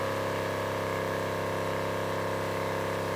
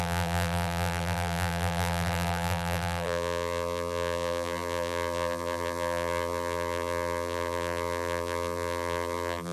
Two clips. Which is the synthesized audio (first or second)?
second